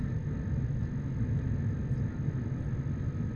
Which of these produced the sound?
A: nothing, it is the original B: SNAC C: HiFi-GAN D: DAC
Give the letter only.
A